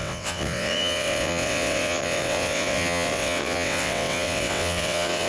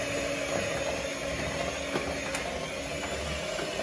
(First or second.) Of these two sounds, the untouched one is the second